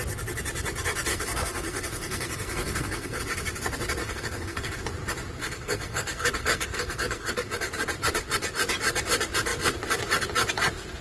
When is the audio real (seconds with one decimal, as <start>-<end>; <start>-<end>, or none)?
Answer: 0.0-1.1; 3.2-4.0; 4.8-5.4; 7.5-11.0